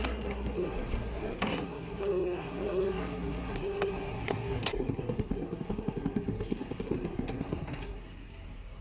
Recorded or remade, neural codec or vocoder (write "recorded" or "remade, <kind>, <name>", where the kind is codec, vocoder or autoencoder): remade, codec, SNAC